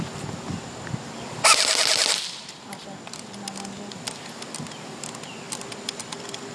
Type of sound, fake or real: real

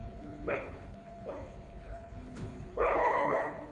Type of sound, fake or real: fake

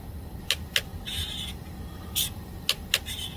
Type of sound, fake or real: real